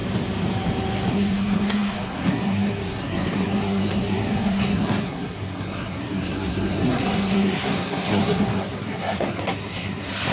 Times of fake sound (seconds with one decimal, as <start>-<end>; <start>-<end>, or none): 1.1-10.3